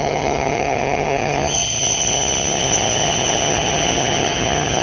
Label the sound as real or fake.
fake